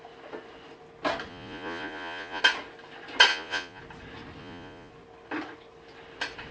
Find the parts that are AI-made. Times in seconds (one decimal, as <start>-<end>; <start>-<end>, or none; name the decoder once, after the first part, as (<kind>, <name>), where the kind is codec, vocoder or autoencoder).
1.3-2.4 (vocoder, Vocos); 3.3-3.8; 4.4-4.9